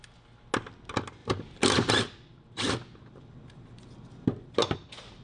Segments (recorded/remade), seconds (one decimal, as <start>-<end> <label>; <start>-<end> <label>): 0.0-1.2 recorded; 1.2-4.3 remade; 4.3-5.2 recorded